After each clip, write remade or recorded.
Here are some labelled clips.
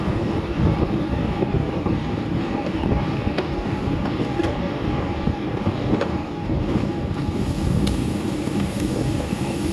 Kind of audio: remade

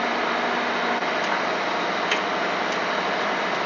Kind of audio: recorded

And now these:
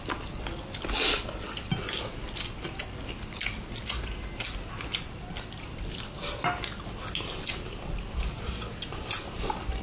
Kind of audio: recorded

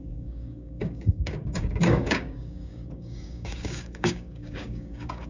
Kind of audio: remade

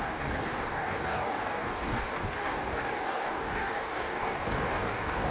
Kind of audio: remade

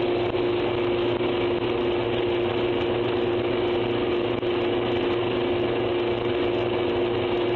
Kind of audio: recorded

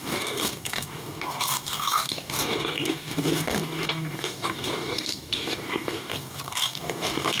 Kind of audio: remade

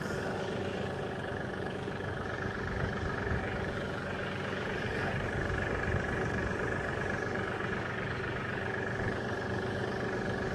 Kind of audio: remade